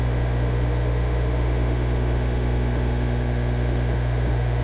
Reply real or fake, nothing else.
fake